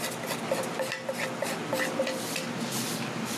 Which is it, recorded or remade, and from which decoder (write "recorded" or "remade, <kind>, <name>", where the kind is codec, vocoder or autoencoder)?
recorded